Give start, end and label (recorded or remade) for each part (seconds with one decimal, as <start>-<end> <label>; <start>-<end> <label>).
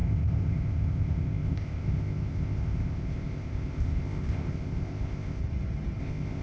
0.0-5.4 remade; 5.4-6.0 recorded; 6.0-6.4 remade